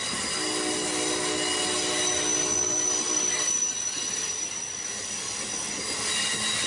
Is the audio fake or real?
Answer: real